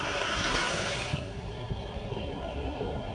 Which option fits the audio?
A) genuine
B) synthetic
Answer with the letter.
B